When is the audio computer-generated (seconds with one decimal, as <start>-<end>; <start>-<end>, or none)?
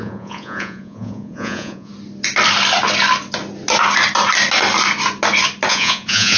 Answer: 0.0-1.9; 5.7-6.4